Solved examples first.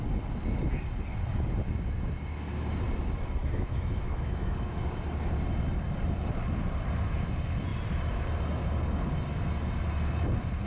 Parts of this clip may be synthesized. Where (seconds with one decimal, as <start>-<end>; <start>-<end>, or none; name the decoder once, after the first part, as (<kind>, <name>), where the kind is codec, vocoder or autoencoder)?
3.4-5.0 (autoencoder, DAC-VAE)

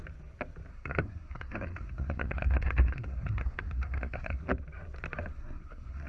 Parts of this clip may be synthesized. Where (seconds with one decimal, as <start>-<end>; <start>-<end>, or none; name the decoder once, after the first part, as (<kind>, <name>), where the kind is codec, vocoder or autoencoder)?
0.7-4.4 (codec, SNAC); 5.3-6.1

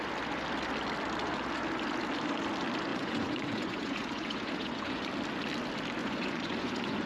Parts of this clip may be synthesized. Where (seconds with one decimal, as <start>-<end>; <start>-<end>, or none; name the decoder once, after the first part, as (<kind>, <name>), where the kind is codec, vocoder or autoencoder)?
2.9-5.1 (vocoder, Vocos); 6.0-7.1